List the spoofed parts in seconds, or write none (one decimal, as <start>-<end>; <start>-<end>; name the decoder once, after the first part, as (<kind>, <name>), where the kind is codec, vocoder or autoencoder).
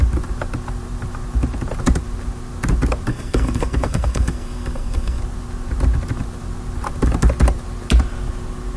3.1-5.2 (codec, SNAC)